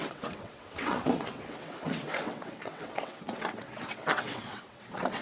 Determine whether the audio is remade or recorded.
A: remade